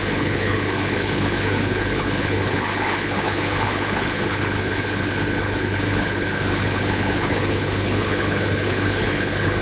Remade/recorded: remade